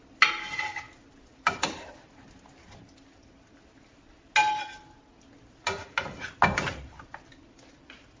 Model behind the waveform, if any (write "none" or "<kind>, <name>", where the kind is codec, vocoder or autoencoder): none